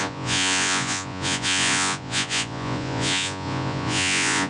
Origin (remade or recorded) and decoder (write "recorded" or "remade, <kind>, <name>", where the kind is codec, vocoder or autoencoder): remade, vocoder, Vocos